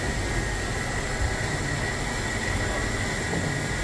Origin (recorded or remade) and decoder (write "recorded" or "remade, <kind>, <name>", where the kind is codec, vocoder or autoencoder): recorded